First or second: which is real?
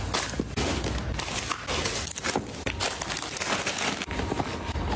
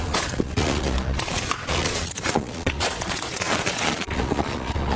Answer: first